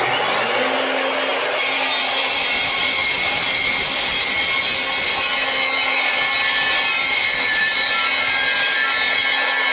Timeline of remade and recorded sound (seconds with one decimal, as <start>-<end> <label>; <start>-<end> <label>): 0.0-1.3 recorded; 1.3-4.1 remade; 4.1-7.2 recorded; 7.2-7.9 remade; 7.9-9.7 recorded